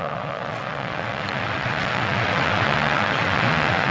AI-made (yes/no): yes